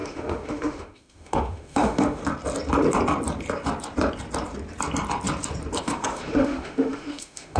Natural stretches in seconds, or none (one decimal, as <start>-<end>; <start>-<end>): 2.2-5.8